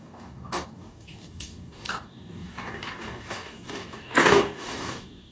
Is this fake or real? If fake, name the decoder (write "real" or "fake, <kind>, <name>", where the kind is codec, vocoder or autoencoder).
fake, codec, DAC